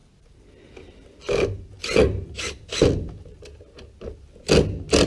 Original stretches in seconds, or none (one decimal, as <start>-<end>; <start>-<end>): 0.0-5.1